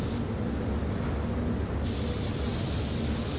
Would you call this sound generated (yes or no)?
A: no